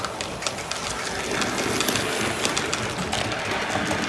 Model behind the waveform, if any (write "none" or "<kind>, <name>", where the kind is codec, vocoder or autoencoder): none